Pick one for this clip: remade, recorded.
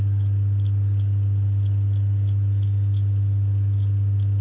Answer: recorded